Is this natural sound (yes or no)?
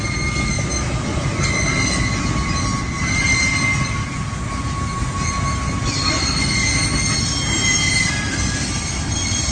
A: yes